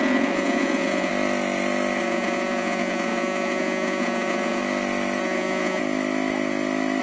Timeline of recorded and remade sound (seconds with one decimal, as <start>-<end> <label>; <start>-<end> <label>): 0.0-1.1 remade; 1.1-2.0 recorded; 2.0-4.6 remade; 4.6-5.2 recorded; 5.2-5.8 remade; 5.8-7.0 recorded